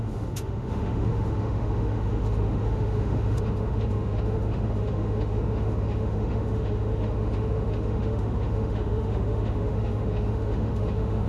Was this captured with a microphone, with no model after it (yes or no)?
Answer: no